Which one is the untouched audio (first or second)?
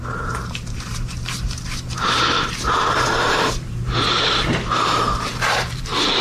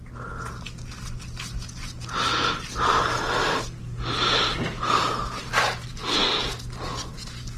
second